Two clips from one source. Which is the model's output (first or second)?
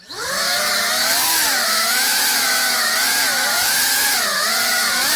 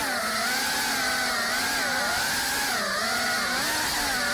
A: first